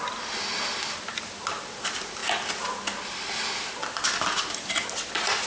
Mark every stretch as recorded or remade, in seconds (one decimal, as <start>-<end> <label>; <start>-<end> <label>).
0.0-5.5 recorded